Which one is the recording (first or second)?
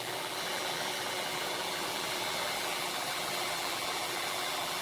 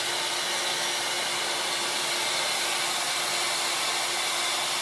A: second